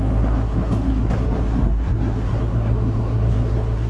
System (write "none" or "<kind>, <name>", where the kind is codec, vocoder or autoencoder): codec, SNAC